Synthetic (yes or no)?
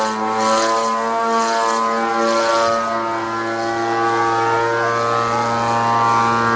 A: no